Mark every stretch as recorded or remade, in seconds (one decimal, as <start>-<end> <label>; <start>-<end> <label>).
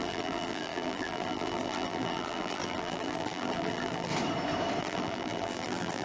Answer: 0.0-4.1 remade; 4.1-4.8 recorded; 4.8-6.0 remade